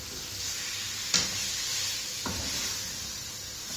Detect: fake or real real